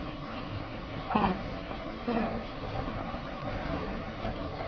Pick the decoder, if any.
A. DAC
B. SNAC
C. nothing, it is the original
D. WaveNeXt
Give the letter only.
B